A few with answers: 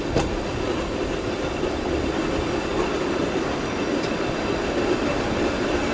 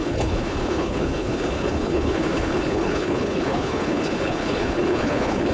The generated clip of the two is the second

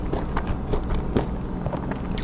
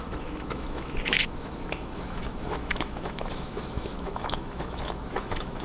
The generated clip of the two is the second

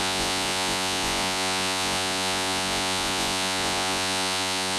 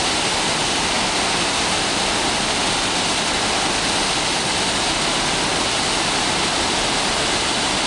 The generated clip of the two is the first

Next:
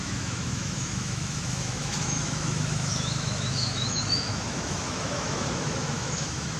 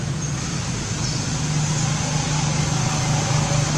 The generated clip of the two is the first